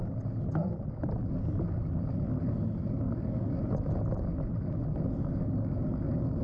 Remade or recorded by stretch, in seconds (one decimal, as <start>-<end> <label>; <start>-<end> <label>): 0.0-6.4 recorded